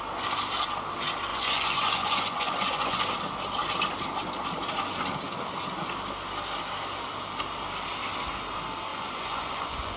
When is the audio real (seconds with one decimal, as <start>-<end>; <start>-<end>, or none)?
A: 0.0-1.3; 3.0-8.9